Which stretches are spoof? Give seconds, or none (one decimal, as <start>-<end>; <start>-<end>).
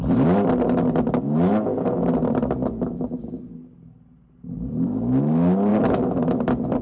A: 5.7-6.8